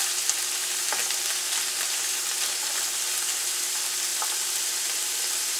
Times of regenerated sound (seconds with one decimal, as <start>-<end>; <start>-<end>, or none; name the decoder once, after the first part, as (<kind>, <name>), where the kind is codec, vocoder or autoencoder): 1.0-2.2 (vocoder, BigVGAN v2); 4.1-5.6